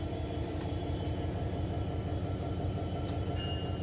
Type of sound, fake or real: fake